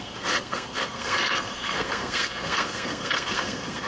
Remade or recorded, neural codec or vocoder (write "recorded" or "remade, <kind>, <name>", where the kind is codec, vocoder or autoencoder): remade, codec, SNAC